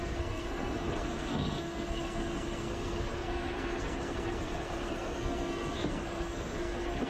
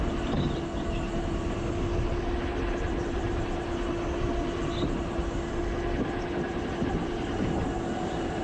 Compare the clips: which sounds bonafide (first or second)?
second